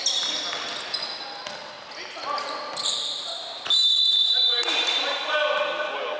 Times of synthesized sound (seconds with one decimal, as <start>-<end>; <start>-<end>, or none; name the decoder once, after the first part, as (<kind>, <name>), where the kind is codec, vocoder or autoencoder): none